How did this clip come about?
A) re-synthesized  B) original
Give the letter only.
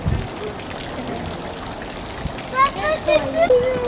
B